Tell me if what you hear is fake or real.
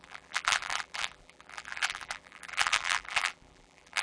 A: fake